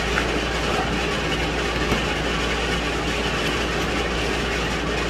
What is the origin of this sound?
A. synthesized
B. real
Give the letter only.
B